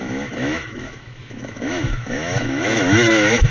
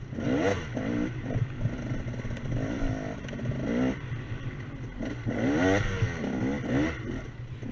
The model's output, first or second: first